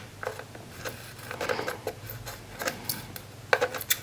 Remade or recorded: recorded